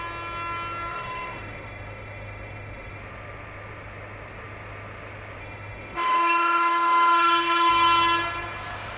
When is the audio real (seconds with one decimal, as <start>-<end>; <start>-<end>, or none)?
0.0-0.9; 3.0-5.4; 7.7-9.0